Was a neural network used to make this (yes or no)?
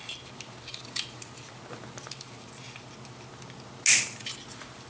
no